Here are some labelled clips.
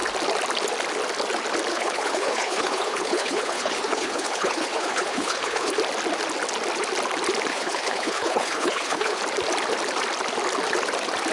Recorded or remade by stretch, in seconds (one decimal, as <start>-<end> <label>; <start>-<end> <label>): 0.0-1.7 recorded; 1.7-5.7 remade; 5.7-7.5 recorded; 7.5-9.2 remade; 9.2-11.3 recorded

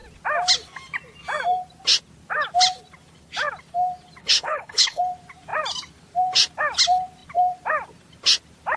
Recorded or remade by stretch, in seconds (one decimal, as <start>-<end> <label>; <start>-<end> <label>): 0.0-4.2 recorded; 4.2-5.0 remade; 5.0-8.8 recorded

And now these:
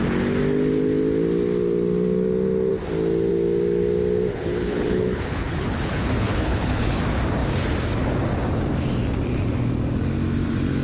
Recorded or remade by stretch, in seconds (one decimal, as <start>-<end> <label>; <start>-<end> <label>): 0.0-4.3 recorded; 4.3-7.0 remade; 7.0-10.8 recorded